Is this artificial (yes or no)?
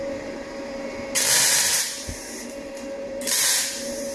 yes